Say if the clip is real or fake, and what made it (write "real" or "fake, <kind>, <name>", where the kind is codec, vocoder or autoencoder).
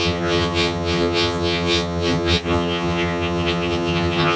fake, vocoder, HiFi-GAN